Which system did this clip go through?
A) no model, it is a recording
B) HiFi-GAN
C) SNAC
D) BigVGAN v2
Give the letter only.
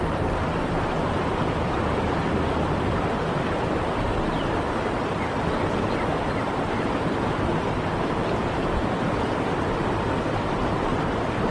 D